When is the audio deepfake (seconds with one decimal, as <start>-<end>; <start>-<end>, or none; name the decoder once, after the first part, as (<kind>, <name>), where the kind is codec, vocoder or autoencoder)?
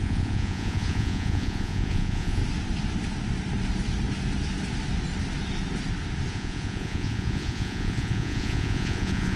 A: 0.0-2.4 (vocoder, Vocos); 6.3-9.4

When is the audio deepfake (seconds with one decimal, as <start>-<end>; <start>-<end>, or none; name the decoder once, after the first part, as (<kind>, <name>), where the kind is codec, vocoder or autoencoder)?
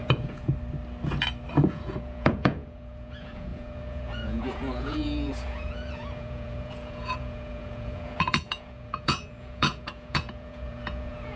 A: 0.0-0.5 (vocoder, Vocos); 1.6-11.4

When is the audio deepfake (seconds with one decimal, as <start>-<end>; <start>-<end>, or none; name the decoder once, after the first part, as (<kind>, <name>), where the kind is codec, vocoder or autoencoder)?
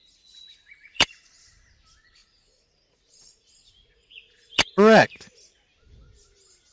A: 0.0-1.6 (vocoder, Vocos); 2.2-5.2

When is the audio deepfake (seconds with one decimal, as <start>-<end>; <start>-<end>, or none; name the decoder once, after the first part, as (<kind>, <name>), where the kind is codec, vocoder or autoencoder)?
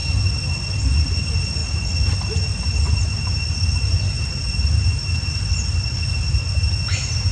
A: none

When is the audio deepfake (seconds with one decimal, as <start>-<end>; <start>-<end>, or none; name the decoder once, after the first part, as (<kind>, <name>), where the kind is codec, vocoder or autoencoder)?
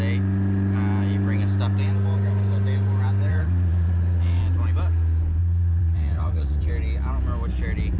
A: 3.3-4.4 (vocoder, Vocos); 5.4-6.7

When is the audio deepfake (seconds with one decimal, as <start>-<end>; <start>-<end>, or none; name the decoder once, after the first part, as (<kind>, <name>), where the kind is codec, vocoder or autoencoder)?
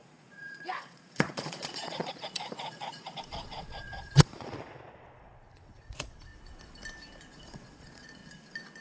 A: 0.0-6.3 (vocoder, Vocos); 7.4-8.2